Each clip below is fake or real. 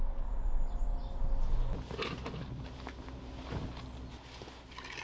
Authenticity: real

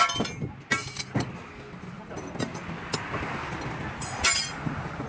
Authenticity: real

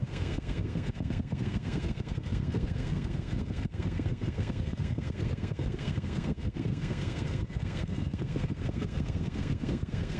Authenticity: fake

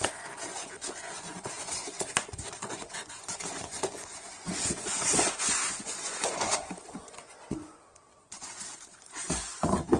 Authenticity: fake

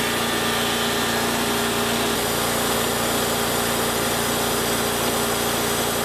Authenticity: real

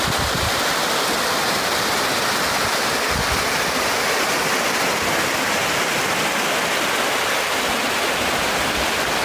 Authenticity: real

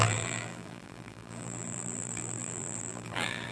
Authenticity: fake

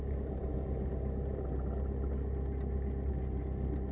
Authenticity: real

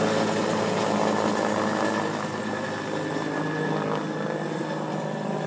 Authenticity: real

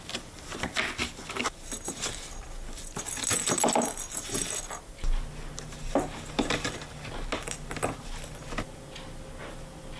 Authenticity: real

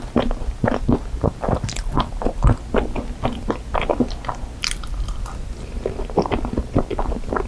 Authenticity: real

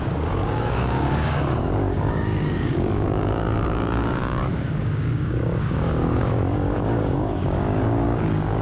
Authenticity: fake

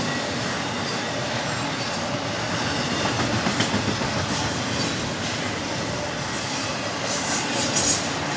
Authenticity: real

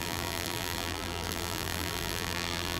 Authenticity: fake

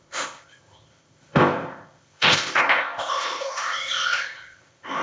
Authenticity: fake